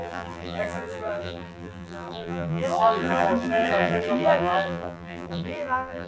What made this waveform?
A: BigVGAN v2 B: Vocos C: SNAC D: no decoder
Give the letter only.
A